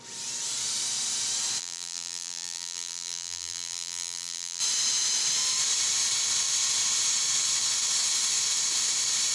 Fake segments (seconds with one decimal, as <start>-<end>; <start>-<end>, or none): 1.6-4.6